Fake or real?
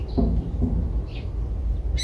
real